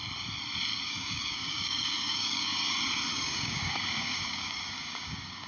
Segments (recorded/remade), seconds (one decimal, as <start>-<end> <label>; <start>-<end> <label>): 0.0-0.7 recorded; 0.7-2.7 remade; 2.7-3.1 recorded; 3.1-5.5 remade